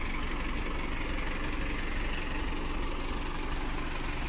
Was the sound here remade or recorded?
recorded